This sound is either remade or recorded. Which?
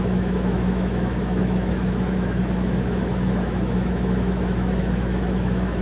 remade